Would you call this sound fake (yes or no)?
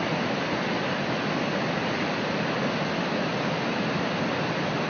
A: no